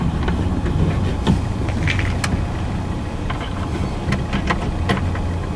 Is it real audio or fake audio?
real